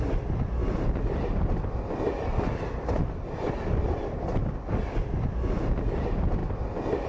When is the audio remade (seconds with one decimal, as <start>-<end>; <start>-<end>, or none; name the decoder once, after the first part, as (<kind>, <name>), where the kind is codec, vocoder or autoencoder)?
none